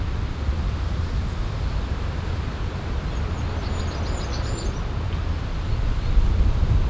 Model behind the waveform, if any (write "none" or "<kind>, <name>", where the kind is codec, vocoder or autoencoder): none